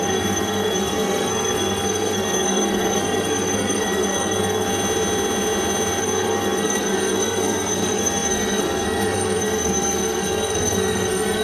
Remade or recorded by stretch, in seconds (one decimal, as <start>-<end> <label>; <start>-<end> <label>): 0.0-4.7 remade; 4.7-6.0 recorded; 6.0-11.4 remade